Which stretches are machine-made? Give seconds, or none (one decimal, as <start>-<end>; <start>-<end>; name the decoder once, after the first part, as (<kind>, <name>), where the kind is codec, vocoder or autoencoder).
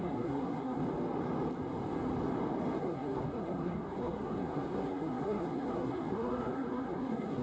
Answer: 0.0-0.8 (codec, SNAC); 2.8-7.4